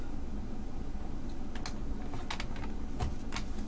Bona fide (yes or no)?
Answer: yes